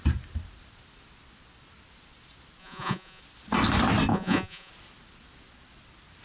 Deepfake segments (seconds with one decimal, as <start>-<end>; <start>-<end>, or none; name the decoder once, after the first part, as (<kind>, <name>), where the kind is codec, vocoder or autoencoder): 2.6-3.2 (vocoder, Vocos); 4.1-4.7